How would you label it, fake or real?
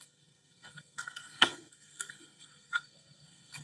fake